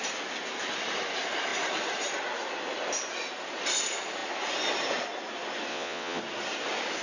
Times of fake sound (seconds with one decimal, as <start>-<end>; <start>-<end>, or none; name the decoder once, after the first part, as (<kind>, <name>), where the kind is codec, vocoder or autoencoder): 5.7-6.2 (vocoder, WaveNeXt)